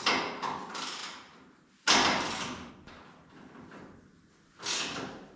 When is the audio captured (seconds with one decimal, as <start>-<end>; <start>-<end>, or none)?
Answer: 0.0-5.4